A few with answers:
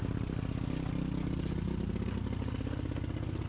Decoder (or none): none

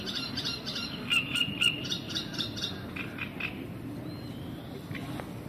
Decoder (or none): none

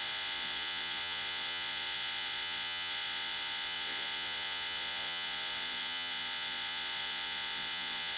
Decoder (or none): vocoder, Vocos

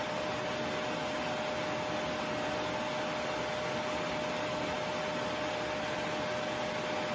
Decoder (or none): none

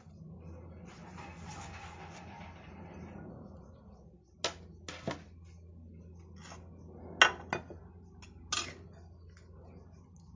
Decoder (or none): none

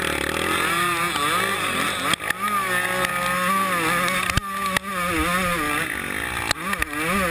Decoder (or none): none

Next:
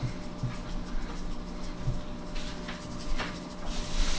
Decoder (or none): none